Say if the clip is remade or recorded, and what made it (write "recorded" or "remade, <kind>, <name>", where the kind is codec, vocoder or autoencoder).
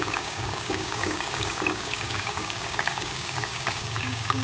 remade, codec, DAC